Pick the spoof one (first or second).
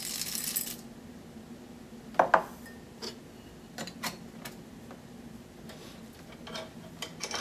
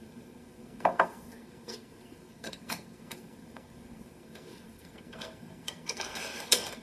second